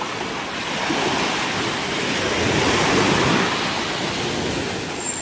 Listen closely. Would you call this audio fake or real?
real